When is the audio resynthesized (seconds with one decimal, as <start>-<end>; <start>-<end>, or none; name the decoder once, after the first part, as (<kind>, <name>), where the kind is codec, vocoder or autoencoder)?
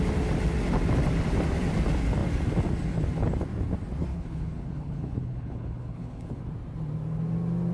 4.1-6.4 (codec, HILCodec)